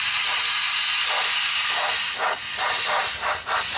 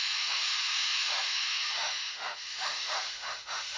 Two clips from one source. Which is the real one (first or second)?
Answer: first